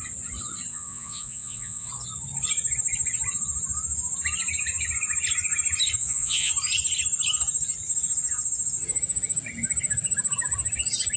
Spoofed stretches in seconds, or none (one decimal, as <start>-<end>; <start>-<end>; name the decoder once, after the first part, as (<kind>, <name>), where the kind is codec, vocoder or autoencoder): 0.7-1.9 (vocoder, Vocos); 6.0-6.5